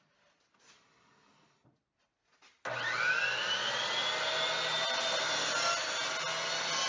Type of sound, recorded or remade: recorded